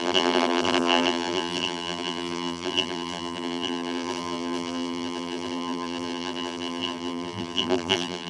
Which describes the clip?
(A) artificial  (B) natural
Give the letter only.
A